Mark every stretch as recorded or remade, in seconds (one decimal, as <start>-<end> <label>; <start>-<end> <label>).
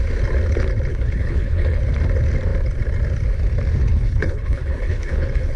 0.0-0.9 recorded; 0.9-1.8 remade; 1.8-3.8 recorded; 3.8-5.6 remade